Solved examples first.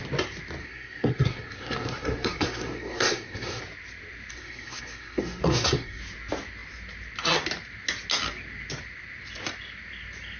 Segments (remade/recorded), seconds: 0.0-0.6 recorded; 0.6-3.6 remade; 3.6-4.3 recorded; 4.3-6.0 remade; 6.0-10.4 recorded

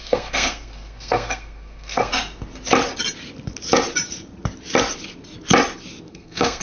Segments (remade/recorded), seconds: 0.0-2.1 remade; 2.1-6.1 recorded; 6.1-6.6 remade

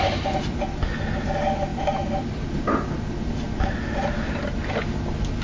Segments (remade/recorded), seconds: 0.0-5.4 recorded

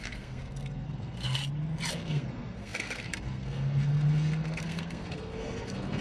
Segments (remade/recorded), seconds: 0.0-1.4 remade; 1.4-1.9 recorded; 1.9-6.0 remade

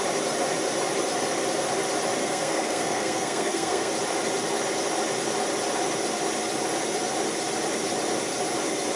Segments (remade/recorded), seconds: 0.0-2.2 recorded; 2.2-3.9 remade; 3.9-9.0 recorded

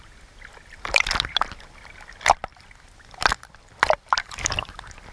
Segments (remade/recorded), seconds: 0.0-5.1 recorded